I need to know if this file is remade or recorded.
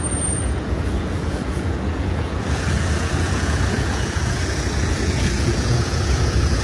remade